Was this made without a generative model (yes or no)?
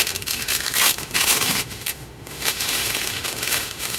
no